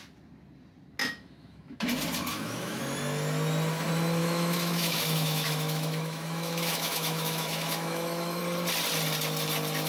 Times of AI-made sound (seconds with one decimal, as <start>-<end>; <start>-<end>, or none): 1.0-1.9; 2.3-2.8; 4.2-8.4